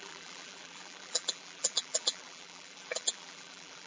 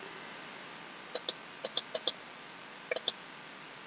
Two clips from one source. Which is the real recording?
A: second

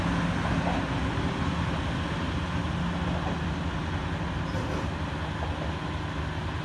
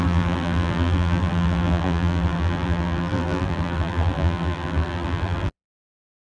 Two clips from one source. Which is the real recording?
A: first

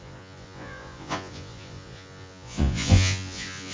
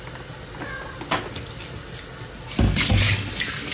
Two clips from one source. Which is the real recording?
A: second